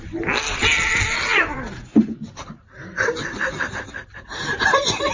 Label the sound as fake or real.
real